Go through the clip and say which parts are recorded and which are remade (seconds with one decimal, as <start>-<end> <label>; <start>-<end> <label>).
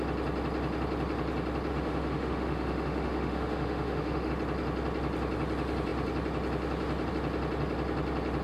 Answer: 0.0-1.7 recorded; 1.7-4.3 remade; 4.3-8.4 recorded